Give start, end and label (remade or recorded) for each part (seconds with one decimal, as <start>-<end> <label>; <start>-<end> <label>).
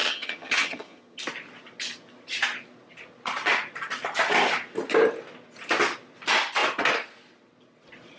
0.0-1.2 remade; 1.2-8.2 recorded